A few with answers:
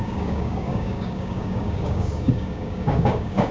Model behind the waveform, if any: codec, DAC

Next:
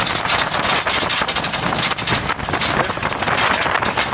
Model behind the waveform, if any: none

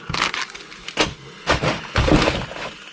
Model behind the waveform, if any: none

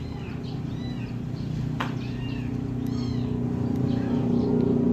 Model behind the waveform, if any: none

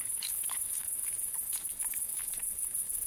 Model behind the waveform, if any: codec, DAC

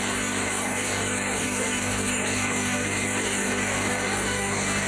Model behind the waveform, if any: codec, DAC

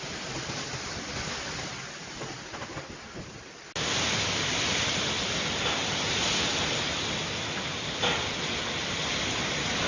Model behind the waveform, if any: none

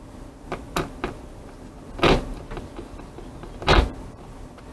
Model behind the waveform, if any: none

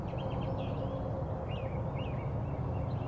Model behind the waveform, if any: none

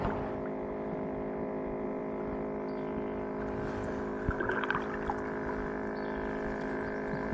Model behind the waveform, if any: none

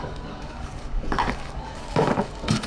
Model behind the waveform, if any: codec, DAC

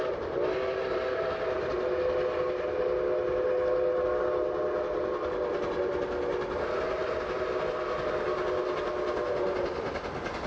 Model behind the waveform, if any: none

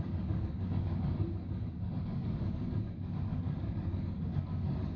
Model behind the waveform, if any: codec, DAC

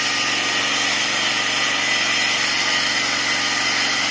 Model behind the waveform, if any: none